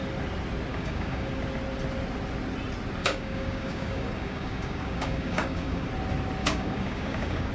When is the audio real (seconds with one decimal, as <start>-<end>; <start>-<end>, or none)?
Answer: 0.0-0.7; 1.3-3.0; 5.9-6.4

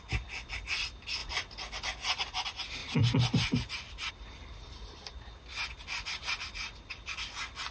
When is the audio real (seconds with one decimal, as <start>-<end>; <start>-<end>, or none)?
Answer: 0.0-2.8; 4.1-7.7